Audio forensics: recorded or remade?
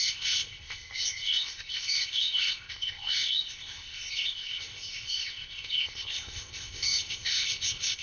remade